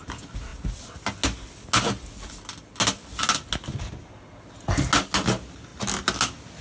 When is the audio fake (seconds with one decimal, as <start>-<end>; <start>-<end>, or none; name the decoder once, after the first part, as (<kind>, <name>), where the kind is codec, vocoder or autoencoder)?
none